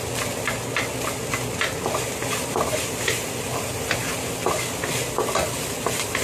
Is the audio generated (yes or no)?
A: no